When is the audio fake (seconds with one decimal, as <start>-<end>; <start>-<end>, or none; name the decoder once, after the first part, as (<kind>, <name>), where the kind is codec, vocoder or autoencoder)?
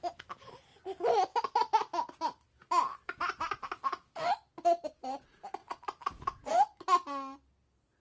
5.6-6.5 (vocoder, BigVGAN v2)